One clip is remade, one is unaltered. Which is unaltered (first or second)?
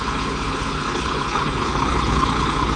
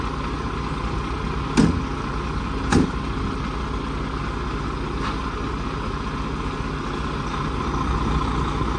second